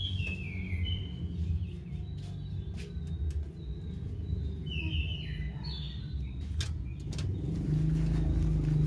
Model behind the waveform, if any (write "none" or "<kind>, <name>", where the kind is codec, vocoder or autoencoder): none